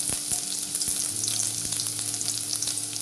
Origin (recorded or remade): recorded